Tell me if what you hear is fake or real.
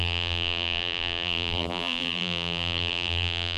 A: fake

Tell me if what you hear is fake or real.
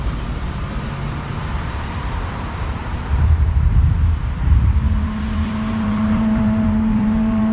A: fake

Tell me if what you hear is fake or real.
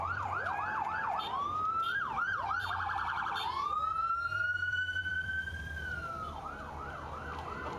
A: fake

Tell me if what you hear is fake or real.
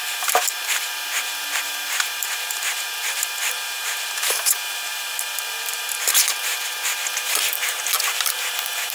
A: fake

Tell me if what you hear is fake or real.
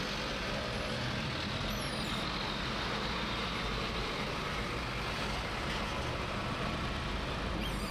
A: real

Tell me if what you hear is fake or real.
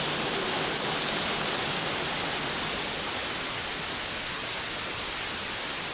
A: real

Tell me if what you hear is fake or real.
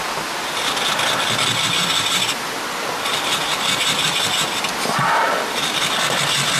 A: real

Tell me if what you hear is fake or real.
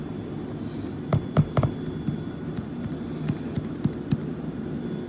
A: real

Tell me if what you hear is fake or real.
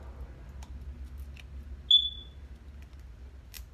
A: real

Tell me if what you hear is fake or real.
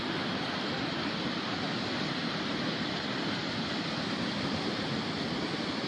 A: fake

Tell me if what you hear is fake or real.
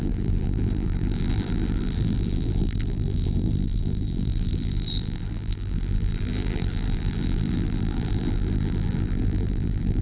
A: fake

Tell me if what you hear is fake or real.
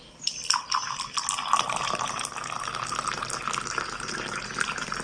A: real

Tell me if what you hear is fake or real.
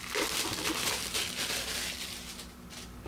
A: real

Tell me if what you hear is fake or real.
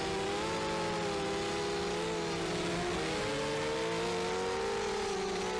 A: real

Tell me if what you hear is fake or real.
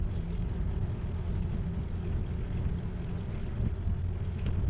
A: real